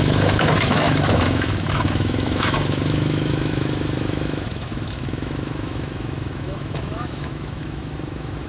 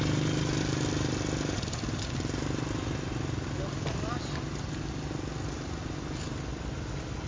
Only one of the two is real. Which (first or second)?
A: second